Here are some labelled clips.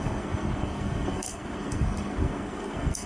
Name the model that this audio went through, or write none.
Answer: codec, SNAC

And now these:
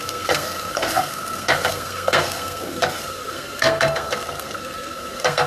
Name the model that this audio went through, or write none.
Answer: codec, SNAC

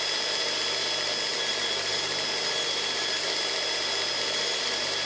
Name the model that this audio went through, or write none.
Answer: none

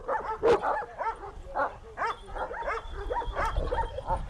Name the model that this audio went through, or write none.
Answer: none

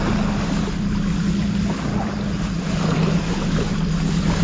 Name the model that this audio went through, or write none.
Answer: none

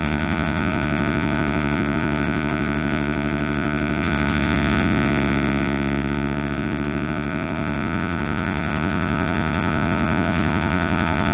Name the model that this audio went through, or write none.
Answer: vocoder, Vocos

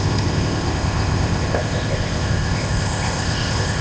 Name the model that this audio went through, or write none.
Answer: codec, ZipCodec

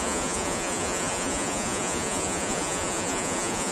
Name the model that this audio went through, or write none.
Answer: vocoder, Vocos